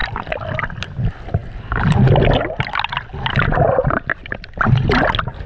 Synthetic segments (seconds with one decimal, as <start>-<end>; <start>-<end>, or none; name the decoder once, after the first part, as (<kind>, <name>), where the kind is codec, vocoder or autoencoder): none